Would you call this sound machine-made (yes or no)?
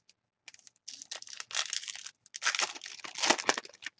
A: no